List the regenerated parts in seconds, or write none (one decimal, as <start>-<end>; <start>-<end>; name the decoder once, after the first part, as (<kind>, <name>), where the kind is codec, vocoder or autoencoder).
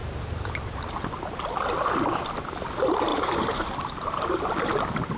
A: 0.0-0.8 (vocoder, BigVGAN v2); 3.1-4.5